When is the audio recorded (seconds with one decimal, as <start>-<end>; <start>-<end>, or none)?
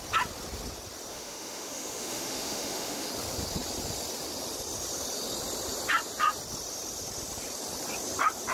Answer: 0.0-1.1; 3.1-8.5